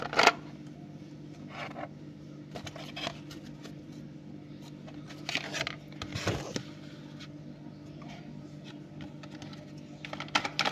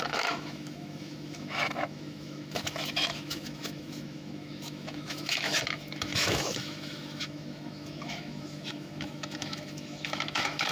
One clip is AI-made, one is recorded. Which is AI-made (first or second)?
second